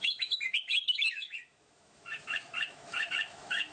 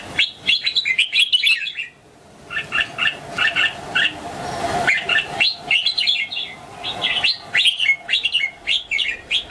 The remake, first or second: first